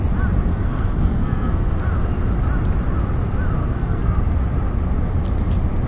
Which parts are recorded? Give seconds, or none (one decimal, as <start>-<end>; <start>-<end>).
0.0-0.5; 1.7-3.6; 4.2-5.9